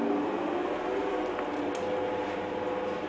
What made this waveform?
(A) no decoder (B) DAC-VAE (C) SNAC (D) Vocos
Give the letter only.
A